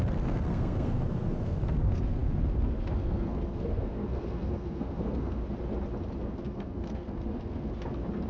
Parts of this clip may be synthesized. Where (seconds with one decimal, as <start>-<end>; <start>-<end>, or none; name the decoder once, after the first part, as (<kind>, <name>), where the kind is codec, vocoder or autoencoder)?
0.0-5.4 (codec, SNAC); 6.2-7.7